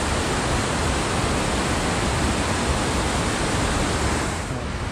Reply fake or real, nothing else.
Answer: real